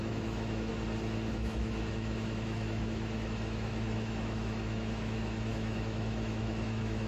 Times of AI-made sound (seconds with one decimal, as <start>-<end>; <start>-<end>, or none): 0.0-0.7; 1.3-7.1